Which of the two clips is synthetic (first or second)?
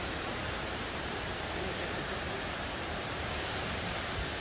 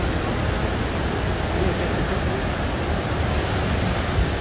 first